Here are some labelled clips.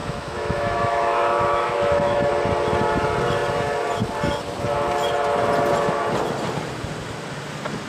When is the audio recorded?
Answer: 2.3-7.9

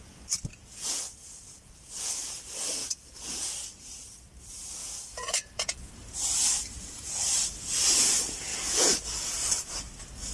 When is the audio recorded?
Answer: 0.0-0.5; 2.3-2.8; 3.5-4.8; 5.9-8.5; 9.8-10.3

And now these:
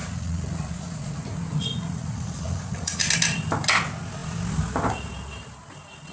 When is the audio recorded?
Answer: 3.0-6.1

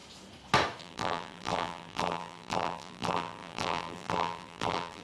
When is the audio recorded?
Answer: 0.0-0.8

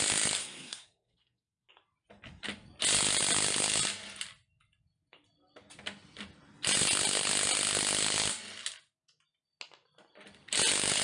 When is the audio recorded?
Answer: 0.0-0.4; 1.7-11.0

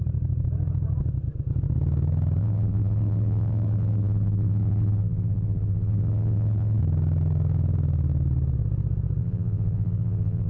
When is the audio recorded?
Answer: 0.0-2.4; 6.8-9.2

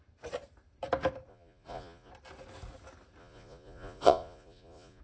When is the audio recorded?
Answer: 0.0-1.3; 2.1-3.2

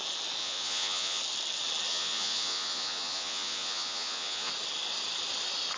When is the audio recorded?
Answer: 0.0-0.4; 1.2-1.9; 4.5-5.8